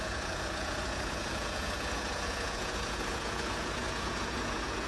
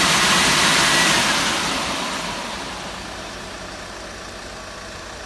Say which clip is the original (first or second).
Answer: second